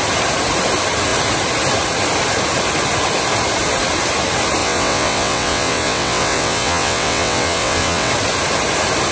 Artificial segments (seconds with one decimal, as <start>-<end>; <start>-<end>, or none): 4.6-8.1